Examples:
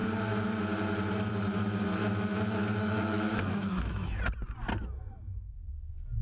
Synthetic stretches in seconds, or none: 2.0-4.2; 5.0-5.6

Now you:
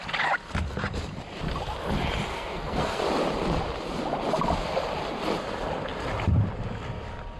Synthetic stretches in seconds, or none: 2.3-3.0